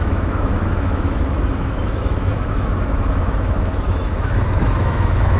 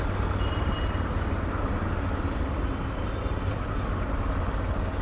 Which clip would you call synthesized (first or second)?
first